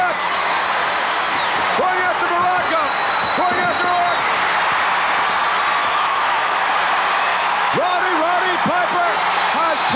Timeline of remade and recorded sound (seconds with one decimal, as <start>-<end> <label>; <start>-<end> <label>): 0.0-5.8 recorded; 5.8-6.6 remade; 6.6-7.3 recorded; 7.3-8.1 remade; 8.1-10.0 recorded